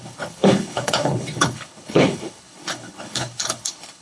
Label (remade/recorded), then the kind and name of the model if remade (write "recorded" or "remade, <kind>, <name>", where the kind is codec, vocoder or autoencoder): remade, codec, HILCodec